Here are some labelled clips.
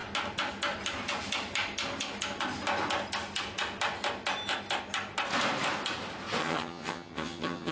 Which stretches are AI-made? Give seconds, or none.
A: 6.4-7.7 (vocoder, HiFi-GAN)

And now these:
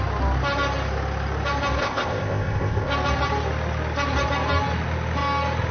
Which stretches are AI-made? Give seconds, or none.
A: 1.8-2.9 (codec, ZipCodec)

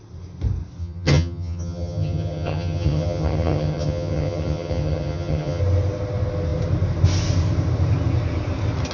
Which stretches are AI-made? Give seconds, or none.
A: 0.8-5.6 (vocoder, HiFi-GAN)

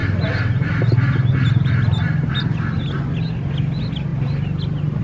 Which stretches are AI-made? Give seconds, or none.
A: none

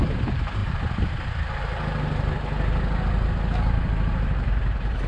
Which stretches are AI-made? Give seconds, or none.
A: 0.0-0.6 (vocoder, BigVGAN v2); 3.7-5.1

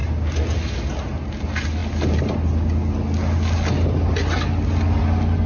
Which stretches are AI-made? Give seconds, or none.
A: none

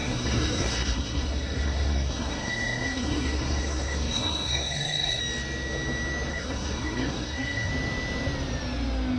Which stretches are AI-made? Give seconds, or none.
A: 0.0-5.2 (codec, SNAC); 6.3-7.7

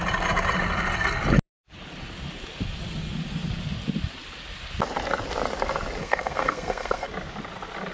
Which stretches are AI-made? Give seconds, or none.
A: 6.0-7.1 (codec, SNAC)